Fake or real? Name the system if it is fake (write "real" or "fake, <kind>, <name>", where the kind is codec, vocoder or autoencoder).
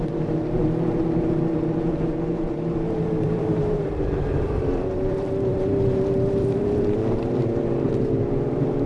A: fake, vocoder, BigVGAN v2